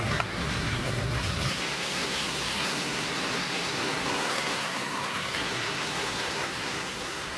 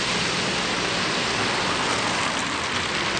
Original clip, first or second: second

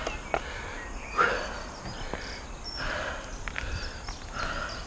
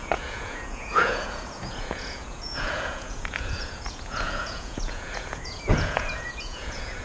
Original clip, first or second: first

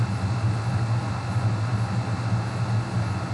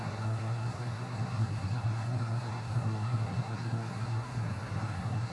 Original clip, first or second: first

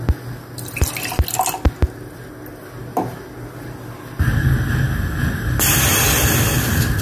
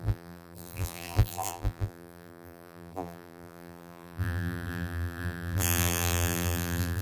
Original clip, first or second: first